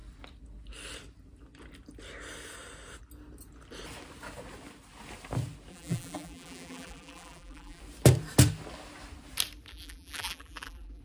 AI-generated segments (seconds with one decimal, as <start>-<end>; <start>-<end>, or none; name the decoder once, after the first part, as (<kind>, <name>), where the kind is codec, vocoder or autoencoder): 5.7-7.8 (vocoder, BigVGAN v2); 9.7-11.0